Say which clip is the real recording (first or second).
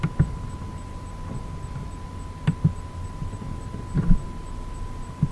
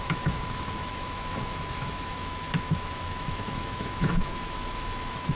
first